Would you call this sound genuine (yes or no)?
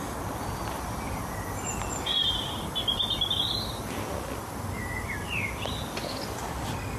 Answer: yes